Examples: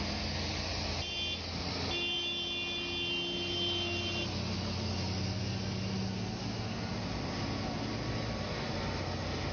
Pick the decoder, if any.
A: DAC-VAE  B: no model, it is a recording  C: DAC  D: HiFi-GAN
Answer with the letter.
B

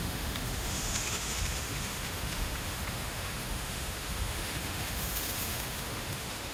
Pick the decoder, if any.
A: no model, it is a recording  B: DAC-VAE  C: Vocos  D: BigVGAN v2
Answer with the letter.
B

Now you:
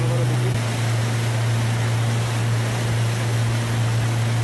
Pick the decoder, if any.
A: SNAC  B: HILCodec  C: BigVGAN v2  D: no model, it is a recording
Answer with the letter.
D